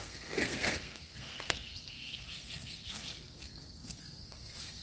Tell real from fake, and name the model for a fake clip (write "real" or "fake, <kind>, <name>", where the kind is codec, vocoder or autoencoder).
fake, codec, SNAC